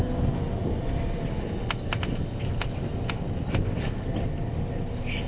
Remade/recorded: recorded